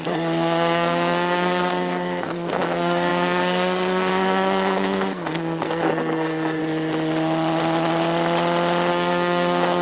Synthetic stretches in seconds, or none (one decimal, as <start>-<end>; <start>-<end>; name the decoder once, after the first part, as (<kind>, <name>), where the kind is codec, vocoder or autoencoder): 0.0-6.6 (codec, SNAC); 8.9-9.8